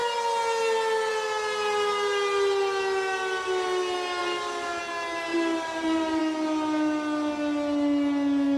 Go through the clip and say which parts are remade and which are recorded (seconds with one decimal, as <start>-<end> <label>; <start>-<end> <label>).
0.0-4.2 recorded; 4.2-4.8 remade; 4.8-5.3 recorded; 5.3-6.2 remade; 6.2-8.6 recorded

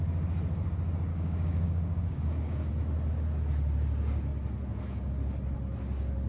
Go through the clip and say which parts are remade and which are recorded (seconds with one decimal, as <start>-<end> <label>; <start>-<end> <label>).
0.0-1.1 recorded; 1.1-2.7 remade; 2.7-6.3 recorded

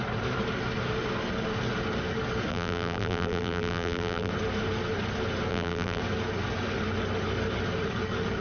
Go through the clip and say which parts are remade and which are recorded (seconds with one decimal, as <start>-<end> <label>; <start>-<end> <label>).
0.0-2.5 recorded; 2.5-4.3 remade; 4.3-5.5 recorded; 5.5-6.0 remade; 6.0-8.4 recorded

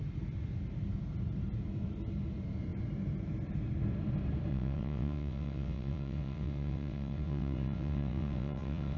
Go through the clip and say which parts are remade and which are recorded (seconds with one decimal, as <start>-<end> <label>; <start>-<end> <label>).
0.0-4.5 recorded; 4.5-9.0 remade

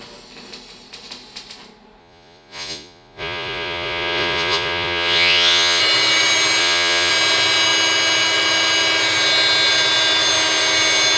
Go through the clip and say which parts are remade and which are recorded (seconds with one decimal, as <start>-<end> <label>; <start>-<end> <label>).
0.0-2.0 recorded; 2.0-5.8 remade; 5.8-6.6 recorded; 6.6-7.1 remade; 7.1-11.2 recorded

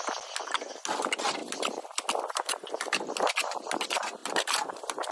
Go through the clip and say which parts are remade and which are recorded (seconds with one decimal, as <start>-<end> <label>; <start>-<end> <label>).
0.0-1.4 recorded; 1.4-3.1 remade; 3.1-4.2 recorded; 4.2-5.1 remade

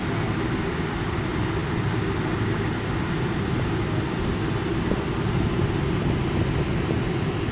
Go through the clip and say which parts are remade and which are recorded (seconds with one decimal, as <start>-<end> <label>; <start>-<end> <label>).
0.0-7.5 recorded